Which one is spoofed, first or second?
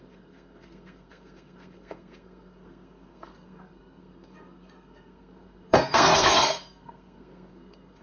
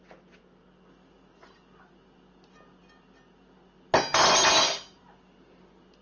first